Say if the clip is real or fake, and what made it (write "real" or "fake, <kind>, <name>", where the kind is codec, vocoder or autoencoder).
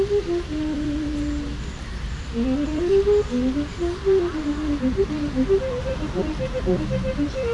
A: fake, vocoder, BigVGAN v2